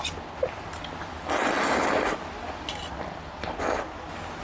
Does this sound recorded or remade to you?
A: recorded